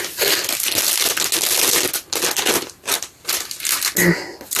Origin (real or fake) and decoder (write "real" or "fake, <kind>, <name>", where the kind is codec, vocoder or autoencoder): real